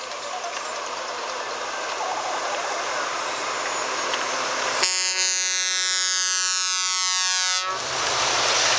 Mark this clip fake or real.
real